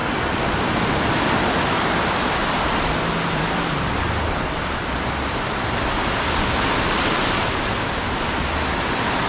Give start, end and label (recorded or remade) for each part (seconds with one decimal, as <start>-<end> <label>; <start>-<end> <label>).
0.0-9.3 recorded